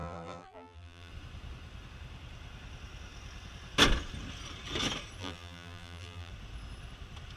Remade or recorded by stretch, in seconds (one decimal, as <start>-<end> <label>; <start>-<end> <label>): 0.0-1.1 remade; 1.1-5.2 recorded; 5.2-6.3 remade; 6.3-7.4 recorded